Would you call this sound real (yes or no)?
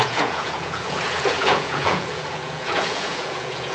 no